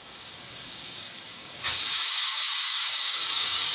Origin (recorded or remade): remade